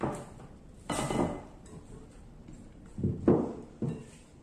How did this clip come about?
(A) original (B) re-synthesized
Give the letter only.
A